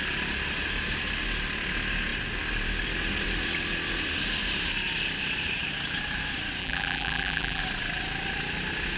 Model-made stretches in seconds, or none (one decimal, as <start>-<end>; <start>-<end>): 6.6-7.6